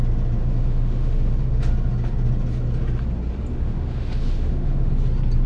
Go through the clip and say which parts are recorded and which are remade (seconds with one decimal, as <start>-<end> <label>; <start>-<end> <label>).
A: 0.0-0.4 recorded; 0.4-1.7 remade; 1.7-3.5 recorded; 3.5-4.9 remade; 4.9-5.5 recorded